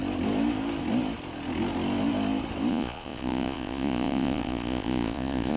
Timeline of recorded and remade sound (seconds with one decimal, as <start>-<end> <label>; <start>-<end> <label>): 0.0-2.7 recorded; 2.7-5.6 remade